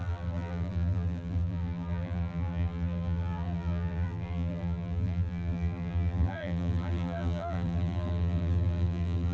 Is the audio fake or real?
fake